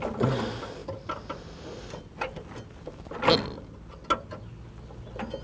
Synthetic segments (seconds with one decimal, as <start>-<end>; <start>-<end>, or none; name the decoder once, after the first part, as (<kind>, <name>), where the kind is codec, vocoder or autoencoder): none